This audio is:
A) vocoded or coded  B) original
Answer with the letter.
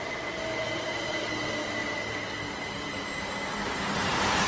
B